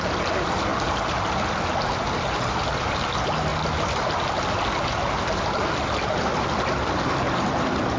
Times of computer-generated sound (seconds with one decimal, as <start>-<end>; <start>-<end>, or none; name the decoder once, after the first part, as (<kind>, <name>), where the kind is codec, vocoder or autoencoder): none